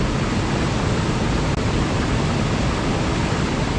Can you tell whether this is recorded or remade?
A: recorded